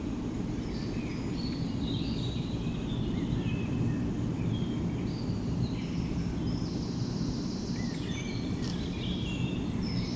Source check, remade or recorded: recorded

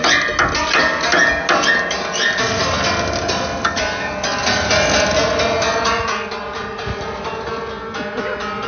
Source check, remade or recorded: recorded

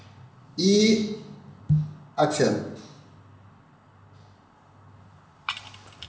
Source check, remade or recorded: recorded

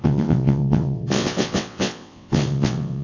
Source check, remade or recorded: remade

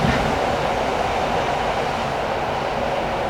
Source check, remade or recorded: recorded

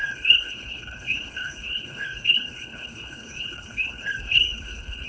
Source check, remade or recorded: remade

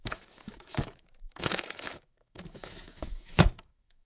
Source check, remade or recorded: remade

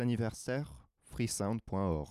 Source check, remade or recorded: recorded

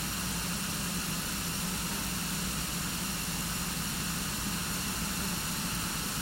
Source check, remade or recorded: recorded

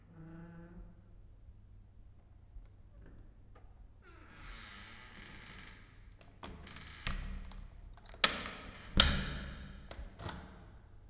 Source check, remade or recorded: recorded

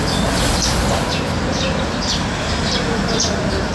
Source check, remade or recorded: recorded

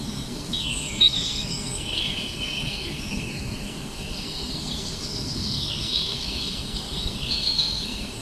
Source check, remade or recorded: remade